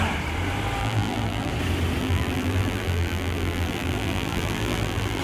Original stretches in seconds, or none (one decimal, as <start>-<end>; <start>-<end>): 0.0-0.8; 1.5-2.0